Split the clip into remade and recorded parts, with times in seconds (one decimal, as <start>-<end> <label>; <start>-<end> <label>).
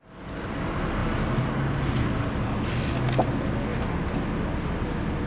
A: 0.0-5.3 recorded